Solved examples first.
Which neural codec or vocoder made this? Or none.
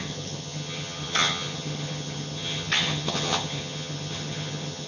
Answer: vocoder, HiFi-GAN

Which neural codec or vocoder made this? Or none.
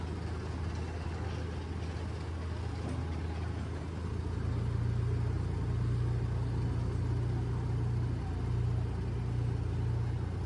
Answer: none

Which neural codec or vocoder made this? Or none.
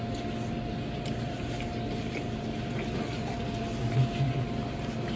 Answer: none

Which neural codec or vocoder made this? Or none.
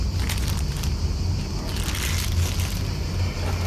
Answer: none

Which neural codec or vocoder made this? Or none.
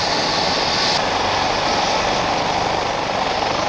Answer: none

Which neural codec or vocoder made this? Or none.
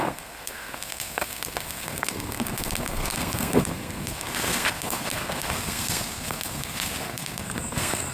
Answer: codec, SNAC